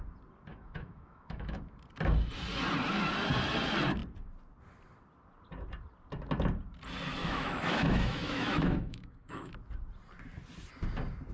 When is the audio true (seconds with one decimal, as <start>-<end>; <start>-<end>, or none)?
0.0-0.5; 1.6-7.2; 9.5-11.3